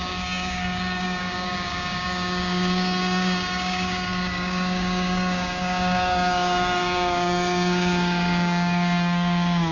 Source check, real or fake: fake